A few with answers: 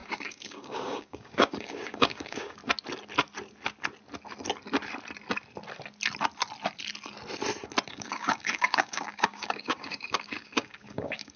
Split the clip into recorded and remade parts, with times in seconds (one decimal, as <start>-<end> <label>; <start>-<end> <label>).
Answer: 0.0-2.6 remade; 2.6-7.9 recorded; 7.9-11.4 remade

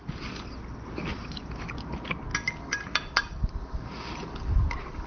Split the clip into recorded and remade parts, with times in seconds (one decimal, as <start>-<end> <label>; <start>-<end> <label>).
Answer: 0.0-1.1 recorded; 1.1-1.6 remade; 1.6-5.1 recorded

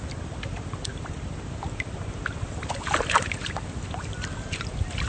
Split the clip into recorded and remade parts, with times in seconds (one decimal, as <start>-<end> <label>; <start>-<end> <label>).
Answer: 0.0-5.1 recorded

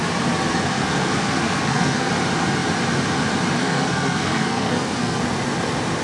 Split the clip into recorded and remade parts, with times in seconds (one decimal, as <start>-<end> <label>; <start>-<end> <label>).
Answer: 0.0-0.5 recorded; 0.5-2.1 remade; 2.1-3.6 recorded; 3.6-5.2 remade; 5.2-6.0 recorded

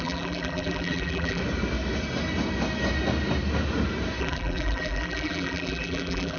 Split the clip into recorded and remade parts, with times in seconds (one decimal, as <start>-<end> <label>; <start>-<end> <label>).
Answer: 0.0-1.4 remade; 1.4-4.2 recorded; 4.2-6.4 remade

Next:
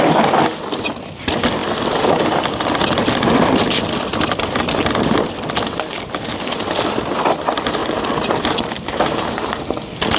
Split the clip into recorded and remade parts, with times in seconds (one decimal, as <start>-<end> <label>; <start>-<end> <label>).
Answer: 0.0-1.6 recorded; 1.6-4.6 remade; 4.6-10.2 recorded

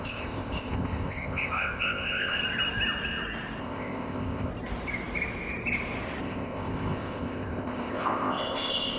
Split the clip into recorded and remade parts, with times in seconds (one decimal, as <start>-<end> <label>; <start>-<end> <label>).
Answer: 0.0-2.4 remade; 2.4-3.6 recorded; 3.6-4.5 remade; 4.5-6.2 recorded; 6.2-9.0 remade